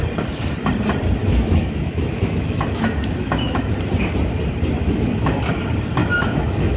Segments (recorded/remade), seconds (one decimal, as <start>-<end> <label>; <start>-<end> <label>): 0.0-1.2 recorded; 1.2-3.7 remade; 3.7-4.8 recorded; 4.8-5.4 remade; 5.4-6.0 recorded; 6.0-6.8 remade